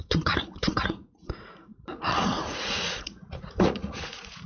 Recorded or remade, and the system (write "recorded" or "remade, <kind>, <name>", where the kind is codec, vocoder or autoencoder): remade, vocoder, Vocos